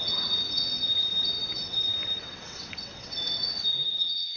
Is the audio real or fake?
fake